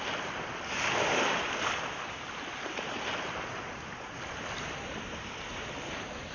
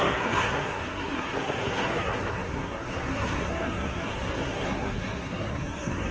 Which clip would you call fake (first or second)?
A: second